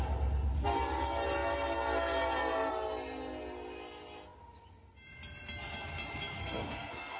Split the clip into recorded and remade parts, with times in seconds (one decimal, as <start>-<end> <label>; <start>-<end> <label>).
0.0-6.4 recorded; 6.4-7.2 remade